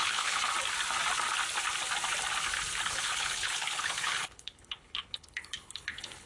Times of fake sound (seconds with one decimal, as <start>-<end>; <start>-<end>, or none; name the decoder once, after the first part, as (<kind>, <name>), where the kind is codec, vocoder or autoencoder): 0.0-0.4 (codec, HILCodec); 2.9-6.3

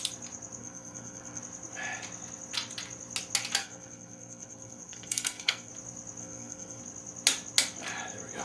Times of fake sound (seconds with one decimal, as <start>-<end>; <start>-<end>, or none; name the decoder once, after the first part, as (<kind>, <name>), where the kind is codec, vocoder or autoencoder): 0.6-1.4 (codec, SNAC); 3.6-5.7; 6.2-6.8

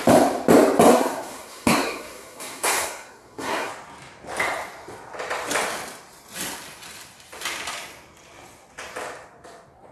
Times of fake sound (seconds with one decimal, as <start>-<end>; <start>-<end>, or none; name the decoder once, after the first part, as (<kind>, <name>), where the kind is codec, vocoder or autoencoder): 0.9-3.7 (codec, SNAC)

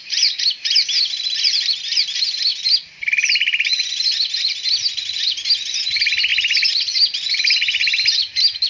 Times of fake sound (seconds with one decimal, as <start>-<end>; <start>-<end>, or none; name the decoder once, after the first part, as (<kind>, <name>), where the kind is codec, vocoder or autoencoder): 6.3-7.2 (vocoder, BigVGAN v2)

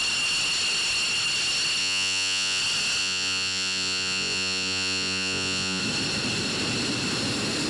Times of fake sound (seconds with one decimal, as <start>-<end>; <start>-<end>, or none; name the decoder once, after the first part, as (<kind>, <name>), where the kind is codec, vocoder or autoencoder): 1.8-2.6 (vocoder, Vocos); 3.0-5.8

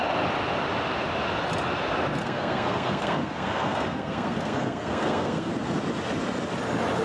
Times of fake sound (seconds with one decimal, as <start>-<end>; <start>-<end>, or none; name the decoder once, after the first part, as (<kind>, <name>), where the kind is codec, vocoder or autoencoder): 2.2-5.5 (codec, SNAC)